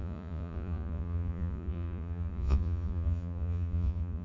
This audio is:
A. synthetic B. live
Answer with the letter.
A